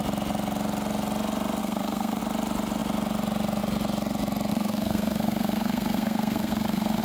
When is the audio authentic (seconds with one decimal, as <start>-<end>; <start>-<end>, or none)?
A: 0.0-1.6; 2.2-4.5